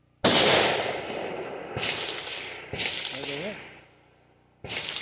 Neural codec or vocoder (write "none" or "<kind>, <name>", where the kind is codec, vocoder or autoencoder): none